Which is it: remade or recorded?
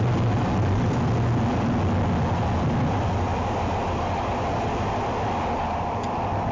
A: recorded